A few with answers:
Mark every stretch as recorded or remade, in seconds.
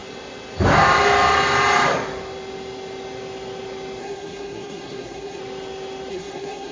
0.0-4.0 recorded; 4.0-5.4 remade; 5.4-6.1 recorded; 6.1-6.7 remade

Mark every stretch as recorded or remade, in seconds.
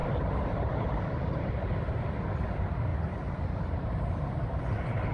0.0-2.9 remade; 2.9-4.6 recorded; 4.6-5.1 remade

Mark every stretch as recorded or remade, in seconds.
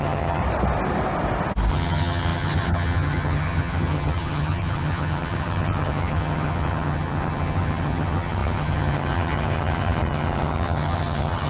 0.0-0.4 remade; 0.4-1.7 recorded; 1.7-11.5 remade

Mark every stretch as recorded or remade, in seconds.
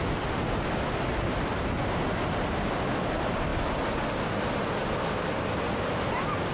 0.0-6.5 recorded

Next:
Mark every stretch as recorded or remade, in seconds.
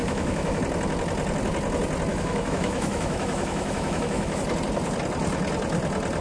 0.0-0.6 remade; 0.6-2.1 recorded; 2.1-4.4 remade; 4.4-6.2 recorded